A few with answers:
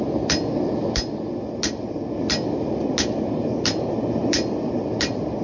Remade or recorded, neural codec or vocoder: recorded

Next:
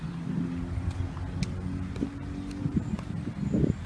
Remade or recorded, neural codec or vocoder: recorded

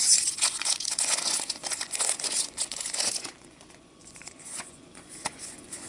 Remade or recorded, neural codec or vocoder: remade, vocoder, Vocos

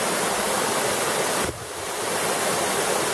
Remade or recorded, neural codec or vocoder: recorded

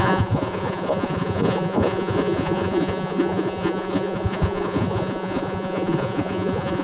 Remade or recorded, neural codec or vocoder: remade, vocoder, Vocos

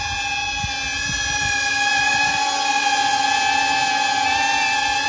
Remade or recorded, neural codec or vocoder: recorded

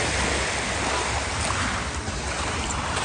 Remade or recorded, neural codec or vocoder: recorded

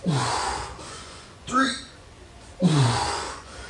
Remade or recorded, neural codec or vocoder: remade, vocoder, Vocos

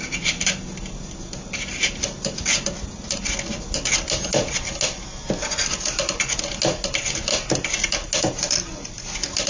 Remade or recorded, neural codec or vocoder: recorded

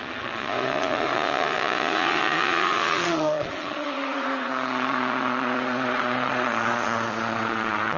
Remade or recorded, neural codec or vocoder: remade, vocoder, Vocos